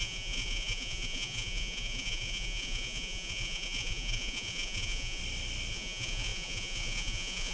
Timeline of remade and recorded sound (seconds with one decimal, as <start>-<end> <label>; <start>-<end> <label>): 0.0-5.2 remade; 5.2-5.7 recorded; 5.7-7.5 remade